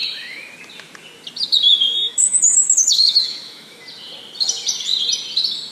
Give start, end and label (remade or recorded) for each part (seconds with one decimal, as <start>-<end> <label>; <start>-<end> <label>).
0.0-0.5 remade; 0.5-1.7 recorded; 1.7-3.8 remade; 3.8-5.7 recorded